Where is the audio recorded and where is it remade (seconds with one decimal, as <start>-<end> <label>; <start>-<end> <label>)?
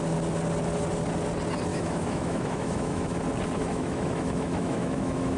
0.0-1.7 recorded; 1.7-3.2 remade; 3.2-3.6 recorded; 3.6-5.4 remade